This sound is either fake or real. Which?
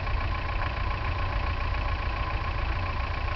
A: real